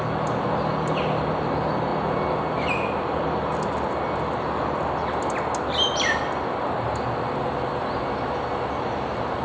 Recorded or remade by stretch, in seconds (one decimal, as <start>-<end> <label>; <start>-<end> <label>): 0.0-9.4 recorded